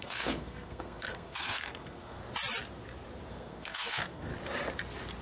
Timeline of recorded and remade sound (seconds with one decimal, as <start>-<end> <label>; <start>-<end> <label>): 0.0-2.2 remade; 2.2-3.3 recorded; 3.3-4.3 remade; 4.3-5.2 recorded